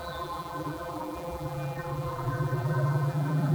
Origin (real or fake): fake